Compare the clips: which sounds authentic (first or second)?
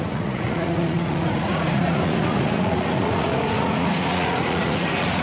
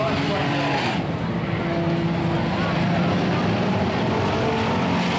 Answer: second